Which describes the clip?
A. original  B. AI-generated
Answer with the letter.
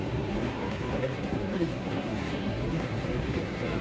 B